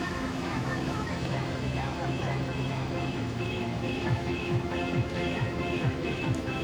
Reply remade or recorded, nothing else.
remade